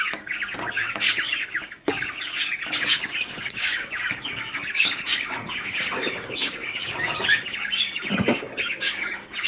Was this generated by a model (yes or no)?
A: yes